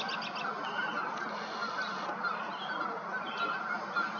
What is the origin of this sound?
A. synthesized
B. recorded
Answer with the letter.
B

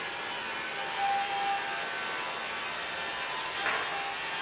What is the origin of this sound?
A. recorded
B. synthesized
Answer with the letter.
A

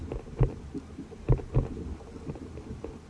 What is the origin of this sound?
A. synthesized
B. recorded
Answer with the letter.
B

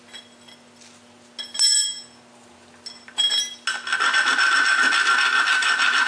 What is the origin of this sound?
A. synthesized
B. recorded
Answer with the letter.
B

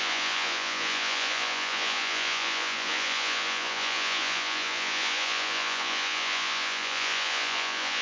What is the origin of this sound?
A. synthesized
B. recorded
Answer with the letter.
A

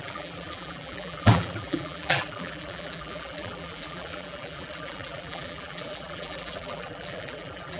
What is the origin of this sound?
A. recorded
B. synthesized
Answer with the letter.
B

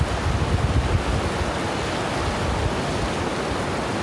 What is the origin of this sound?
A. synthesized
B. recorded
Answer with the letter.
B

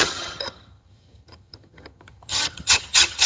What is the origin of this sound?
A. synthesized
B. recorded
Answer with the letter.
A